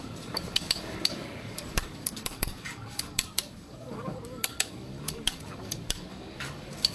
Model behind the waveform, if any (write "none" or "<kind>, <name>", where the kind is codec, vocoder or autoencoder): codec, DAC